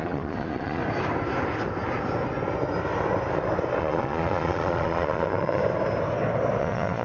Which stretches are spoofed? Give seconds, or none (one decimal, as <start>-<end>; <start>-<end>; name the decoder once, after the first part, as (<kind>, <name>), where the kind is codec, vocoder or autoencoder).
0.0-0.8 (vocoder, Vocos); 3.8-5.6; 6.6-7.0